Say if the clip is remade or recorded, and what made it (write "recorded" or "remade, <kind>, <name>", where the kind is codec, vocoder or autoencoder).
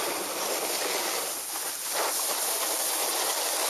recorded